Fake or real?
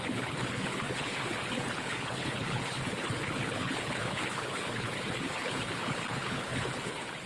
fake